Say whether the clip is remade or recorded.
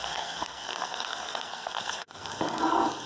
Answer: remade